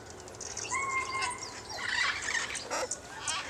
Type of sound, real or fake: real